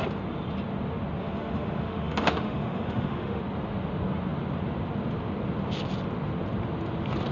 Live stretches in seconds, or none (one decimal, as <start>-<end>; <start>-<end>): 0.0-1.2; 3.4-7.3

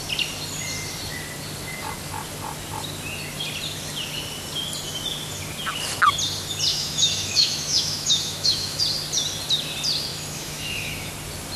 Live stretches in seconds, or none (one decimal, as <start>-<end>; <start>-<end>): 0.0-6.7; 8.8-10.1; 11.1-11.6

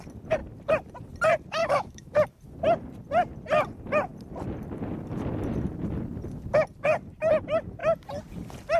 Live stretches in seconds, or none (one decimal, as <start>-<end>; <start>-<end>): 0.0-1.6; 2.1-8.8

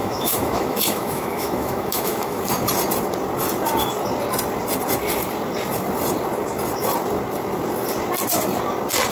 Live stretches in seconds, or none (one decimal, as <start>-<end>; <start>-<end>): 2.4-9.1

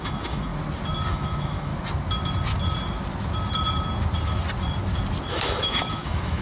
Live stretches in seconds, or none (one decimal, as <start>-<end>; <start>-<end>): 0.5-1.1; 1.7-5.3